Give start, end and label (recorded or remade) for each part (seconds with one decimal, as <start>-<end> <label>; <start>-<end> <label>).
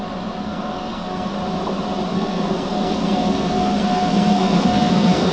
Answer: 0.0-0.4 recorded; 0.4-1.3 remade; 1.3-2.1 recorded; 2.1-5.3 remade